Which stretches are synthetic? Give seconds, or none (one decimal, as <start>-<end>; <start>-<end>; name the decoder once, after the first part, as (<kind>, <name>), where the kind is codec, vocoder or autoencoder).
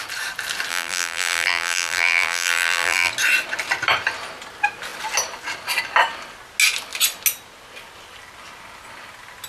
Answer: 0.7-3.1 (vocoder, BigVGAN v2)